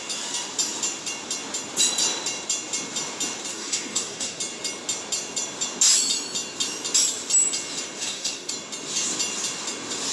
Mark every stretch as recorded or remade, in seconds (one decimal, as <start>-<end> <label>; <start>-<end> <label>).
0.0-3.5 recorded; 3.5-4.4 remade; 4.4-8.0 recorded; 8.0-8.5 remade; 8.5-10.1 recorded